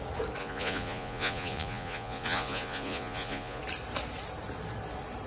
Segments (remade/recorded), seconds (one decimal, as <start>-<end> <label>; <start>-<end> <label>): 0.0-0.4 recorded; 0.4-3.6 remade; 3.6-5.3 recorded